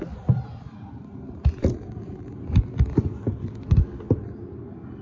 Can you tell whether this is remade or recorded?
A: recorded